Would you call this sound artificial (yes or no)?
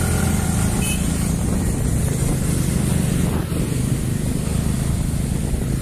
no